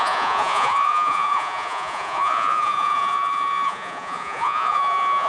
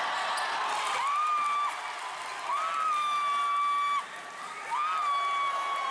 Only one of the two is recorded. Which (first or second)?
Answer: second